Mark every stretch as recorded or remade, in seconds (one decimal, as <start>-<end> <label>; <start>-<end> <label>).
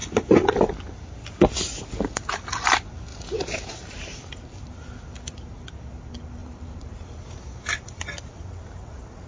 0.0-3.1 recorded; 3.1-4.3 remade; 4.3-6.4 recorded; 6.4-7.2 remade; 7.2-9.3 recorded